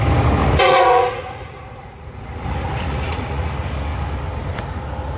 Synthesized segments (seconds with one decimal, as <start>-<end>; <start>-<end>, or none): 0.4-3.5